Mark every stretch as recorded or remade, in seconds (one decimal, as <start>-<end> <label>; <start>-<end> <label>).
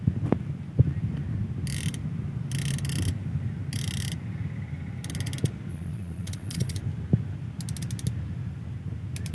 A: 0.0-5.7 recorded; 5.7-6.8 remade; 6.8-9.3 recorded